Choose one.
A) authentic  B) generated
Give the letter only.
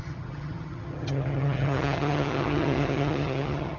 B